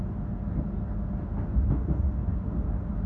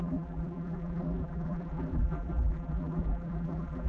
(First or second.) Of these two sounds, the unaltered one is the first